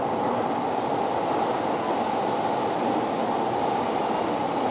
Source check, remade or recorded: recorded